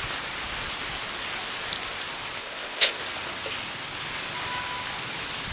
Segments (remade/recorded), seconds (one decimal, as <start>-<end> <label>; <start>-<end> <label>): 0.0-2.4 recorded; 2.4-3.0 remade; 3.0-5.5 recorded